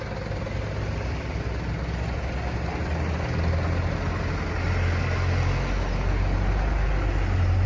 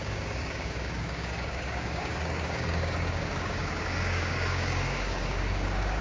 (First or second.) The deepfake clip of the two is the second